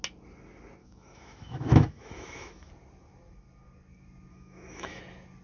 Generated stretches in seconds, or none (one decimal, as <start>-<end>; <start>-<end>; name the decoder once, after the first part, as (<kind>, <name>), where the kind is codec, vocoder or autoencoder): 0.8-2.7 (autoencoder, DAC-VAE); 4.3-5.0